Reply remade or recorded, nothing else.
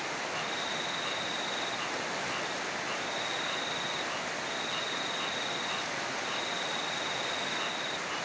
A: recorded